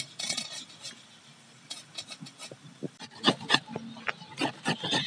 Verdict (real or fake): real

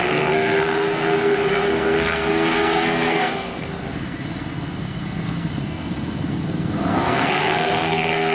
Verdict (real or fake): fake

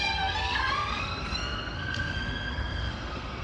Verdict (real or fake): fake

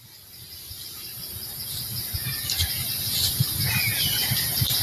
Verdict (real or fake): real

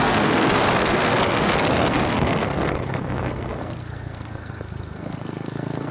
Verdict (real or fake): fake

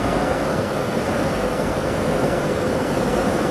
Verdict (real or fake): fake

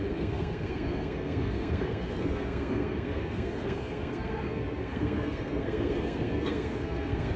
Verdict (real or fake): fake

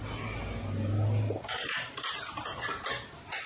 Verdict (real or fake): real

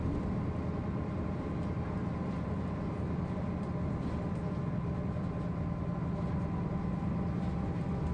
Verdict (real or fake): real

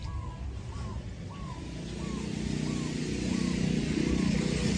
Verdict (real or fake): real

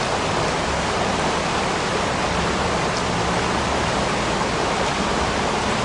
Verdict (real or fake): real